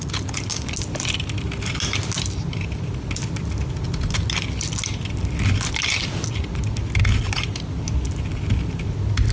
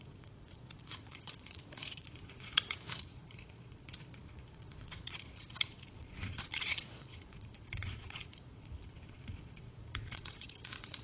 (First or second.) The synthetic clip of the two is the second